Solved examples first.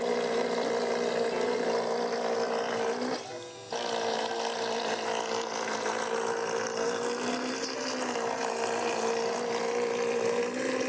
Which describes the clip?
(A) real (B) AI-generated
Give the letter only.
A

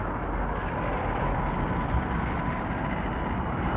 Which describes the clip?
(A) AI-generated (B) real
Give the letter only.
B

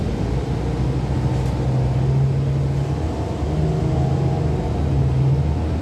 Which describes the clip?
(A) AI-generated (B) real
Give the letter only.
B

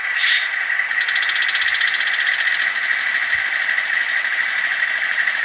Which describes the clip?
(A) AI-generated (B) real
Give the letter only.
B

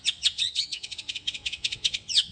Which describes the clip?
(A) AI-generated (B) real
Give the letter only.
A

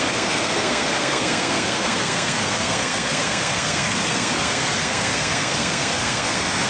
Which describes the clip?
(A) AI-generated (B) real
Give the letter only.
A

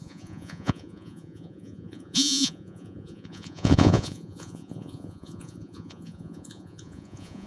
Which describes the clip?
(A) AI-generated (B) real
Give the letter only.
A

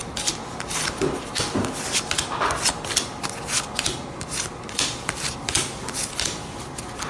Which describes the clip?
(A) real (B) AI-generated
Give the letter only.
A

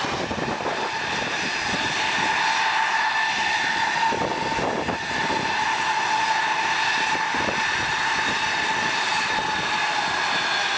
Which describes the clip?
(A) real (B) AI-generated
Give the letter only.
A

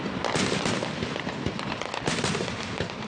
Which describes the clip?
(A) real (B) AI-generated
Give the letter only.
A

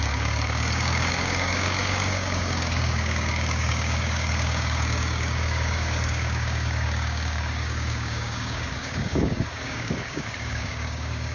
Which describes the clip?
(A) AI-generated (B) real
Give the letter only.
A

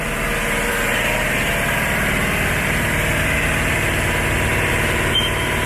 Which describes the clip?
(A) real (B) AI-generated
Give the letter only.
B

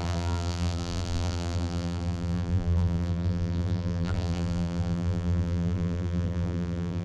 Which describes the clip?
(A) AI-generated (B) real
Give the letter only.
A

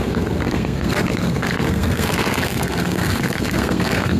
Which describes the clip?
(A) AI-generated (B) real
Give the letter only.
A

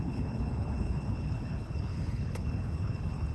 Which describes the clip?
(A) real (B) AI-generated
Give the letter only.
B